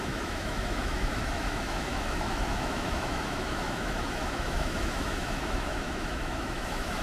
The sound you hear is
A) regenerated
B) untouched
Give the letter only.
A